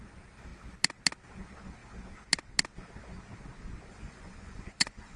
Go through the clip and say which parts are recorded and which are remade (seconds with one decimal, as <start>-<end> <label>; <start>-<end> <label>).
0.0-3.9 recorded; 3.9-5.2 remade